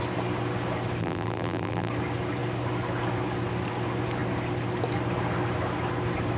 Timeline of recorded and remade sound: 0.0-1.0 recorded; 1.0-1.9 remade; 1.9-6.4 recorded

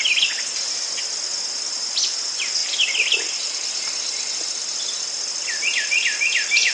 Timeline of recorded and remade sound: 0.0-6.7 recorded

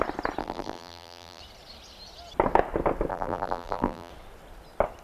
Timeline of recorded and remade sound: 0.0-0.4 recorded; 0.4-1.4 remade; 1.4-3.1 recorded; 3.1-4.1 remade; 4.1-5.0 recorded

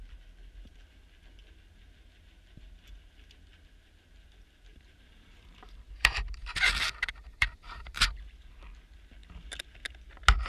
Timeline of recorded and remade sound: 0.0-4.7 recorded; 4.7-8.6 remade; 8.6-10.5 recorded

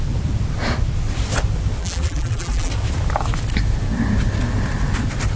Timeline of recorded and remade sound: 0.0-1.8 recorded; 1.8-2.7 remade; 2.7-5.4 recorded